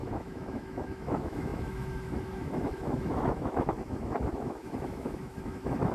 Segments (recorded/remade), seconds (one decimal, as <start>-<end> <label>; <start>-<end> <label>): 0.0-5.9 remade